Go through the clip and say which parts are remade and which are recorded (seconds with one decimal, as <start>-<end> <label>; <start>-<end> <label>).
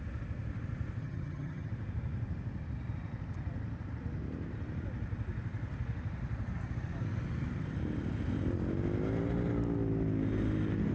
0.0-1.0 recorded; 1.0-1.7 remade; 1.7-10.9 recorded